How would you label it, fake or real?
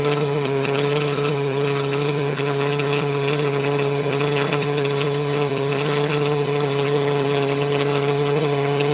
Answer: fake